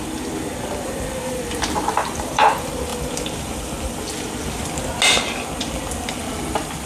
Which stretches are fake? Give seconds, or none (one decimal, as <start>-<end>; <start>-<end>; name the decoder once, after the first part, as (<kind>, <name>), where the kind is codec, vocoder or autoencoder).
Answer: 2.0-2.5 (vocoder, BigVGAN v2); 2.9-5.0; 5.6-6.2